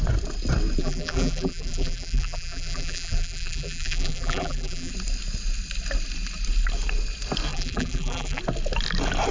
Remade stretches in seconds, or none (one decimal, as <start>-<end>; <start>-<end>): 0.8-4.9; 7.5-8.4